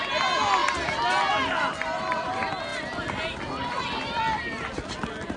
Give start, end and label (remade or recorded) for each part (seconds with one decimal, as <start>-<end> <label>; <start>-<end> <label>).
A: 0.0-5.4 recorded